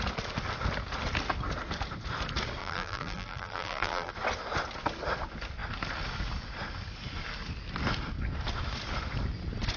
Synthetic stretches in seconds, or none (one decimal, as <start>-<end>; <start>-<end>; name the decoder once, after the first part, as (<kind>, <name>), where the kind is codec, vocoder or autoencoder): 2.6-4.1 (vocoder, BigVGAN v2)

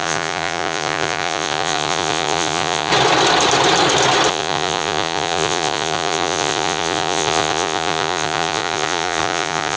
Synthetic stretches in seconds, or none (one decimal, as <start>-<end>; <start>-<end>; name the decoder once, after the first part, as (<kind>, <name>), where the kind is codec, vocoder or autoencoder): 0.0-2.9 (vocoder, Vocos); 4.3-9.8

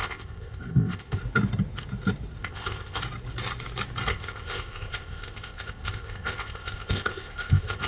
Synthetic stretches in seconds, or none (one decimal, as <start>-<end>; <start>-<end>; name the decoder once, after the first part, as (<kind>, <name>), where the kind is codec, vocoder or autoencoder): 0.0-1.2 (codec, ZipCodec); 2.4-3.0; 4.1-7.9